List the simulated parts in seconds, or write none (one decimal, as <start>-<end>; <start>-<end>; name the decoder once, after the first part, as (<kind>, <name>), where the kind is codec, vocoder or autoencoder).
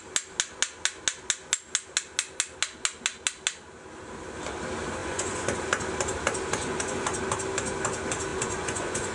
5.0-5.6 (vocoder, Vocos); 6.6-7.1; 8.3-9.1